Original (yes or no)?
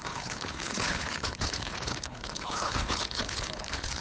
no